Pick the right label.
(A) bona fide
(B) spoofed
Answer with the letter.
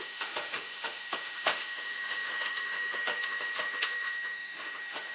B